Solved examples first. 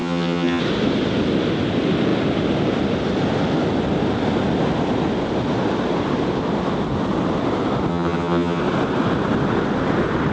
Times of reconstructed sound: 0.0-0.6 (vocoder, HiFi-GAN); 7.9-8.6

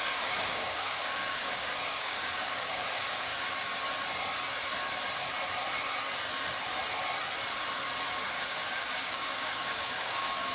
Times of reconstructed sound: 0.0-3.3 (codec, DAC); 8.2-10.5

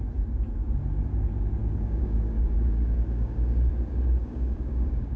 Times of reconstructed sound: 1.6-3.7 (codec, DAC); 4.2-5.2

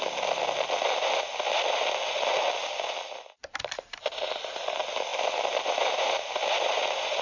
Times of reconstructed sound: 3.4-4.5 (vocoder, BigVGAN v2); 5.1-7.2

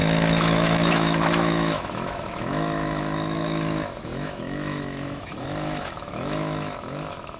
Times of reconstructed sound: 0.0-7.4 (autoencoder, DAC-VAE)

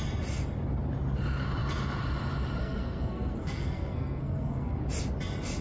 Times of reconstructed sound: 2.6-4.8 (codec, SNAC)

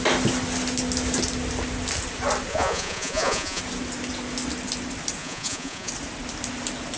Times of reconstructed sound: 2.5-3.6 (vocoder, Vocos); 5.2-5.9

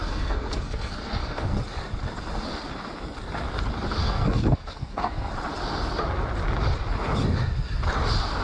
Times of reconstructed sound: 0.0-1.6 (codec, SNAC); 4.0-5.3